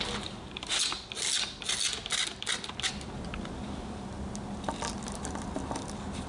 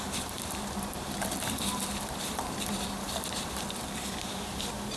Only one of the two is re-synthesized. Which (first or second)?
second